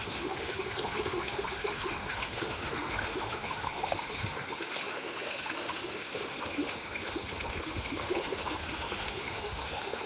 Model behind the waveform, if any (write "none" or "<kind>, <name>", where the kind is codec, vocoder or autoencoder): autoencoder, DAC-VAE